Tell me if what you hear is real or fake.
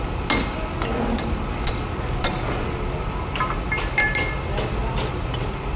real